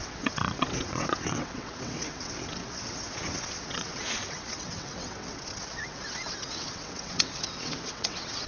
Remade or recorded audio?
remade